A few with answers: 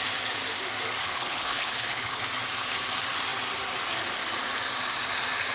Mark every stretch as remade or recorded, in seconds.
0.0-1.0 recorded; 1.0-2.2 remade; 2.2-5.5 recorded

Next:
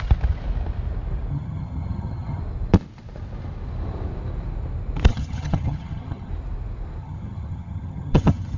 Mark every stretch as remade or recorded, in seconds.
0.0-1.3 recorded; 1.3-2.4 remade; 2.4-5.1 recorded; 5.1-6.3 remade; 6.3-7.0 recorded; 7.0-8.6 remade

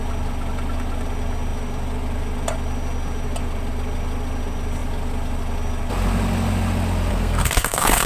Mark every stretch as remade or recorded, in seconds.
0.0-7.1 recorded; 7.1-8.1 remade